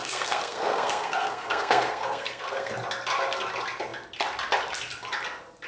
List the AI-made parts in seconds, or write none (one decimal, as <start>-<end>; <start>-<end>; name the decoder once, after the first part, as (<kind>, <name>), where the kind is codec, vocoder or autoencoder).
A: 0.0-2.7 (codec, SNAC)